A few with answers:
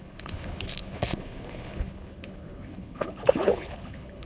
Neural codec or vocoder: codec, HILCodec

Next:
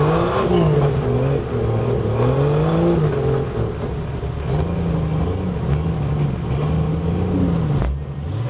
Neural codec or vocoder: none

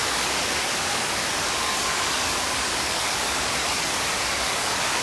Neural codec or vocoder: codec, DAC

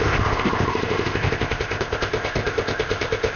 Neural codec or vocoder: codec, ZipCodec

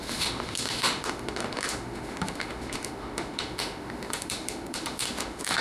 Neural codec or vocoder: autoencoder, DAC-VAE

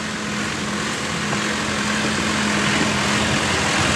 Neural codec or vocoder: none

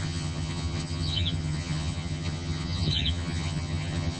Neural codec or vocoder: vocoder, HiFi-GAN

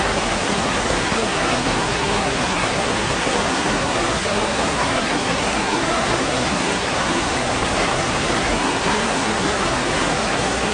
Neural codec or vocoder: codec, SNAC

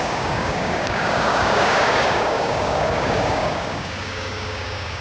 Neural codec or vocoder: codec, DAC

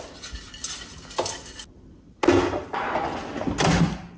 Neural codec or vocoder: none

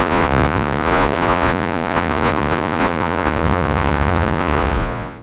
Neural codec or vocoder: vocoder, Vocos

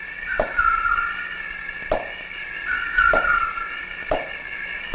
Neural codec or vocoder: none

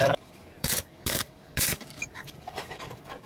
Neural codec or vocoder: codec, DAC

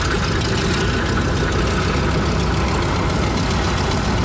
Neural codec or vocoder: none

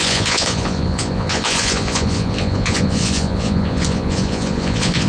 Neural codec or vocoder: vocoder, Vocos